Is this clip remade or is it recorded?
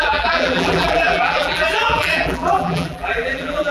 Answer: remade